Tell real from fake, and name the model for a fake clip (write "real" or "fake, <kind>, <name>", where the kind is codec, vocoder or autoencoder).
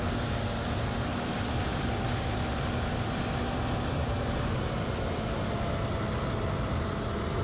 real